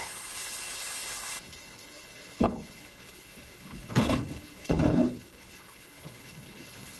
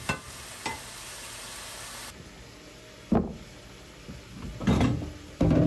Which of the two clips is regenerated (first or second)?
first